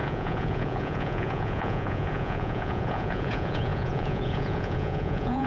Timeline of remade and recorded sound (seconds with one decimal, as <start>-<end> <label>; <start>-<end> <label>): 0.0-5.5 remade